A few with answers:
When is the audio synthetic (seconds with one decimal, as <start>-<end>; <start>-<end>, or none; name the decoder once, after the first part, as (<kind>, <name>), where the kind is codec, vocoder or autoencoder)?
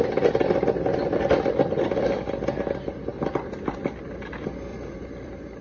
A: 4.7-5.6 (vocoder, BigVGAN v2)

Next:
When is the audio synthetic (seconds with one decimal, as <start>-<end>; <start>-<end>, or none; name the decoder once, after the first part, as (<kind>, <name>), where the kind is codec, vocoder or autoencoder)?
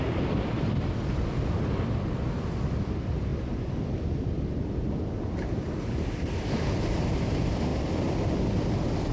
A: 7.7-9.1 (vocoder, BigVGAN v2)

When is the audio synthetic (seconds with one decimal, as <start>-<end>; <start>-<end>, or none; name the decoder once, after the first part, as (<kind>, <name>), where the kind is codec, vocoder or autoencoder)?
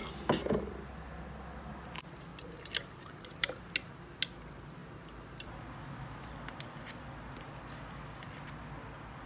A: 2.3-3.7 (vocoder, BigVGAN v2)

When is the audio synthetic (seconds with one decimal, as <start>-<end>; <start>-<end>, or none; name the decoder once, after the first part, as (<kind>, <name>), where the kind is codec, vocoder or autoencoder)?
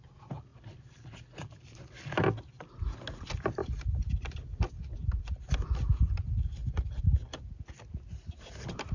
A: 0.5-2.7 (vocoder, BigVGAN v2); 3.6-4.6; 5.0-7.0